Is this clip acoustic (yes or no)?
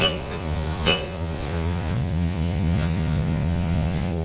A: no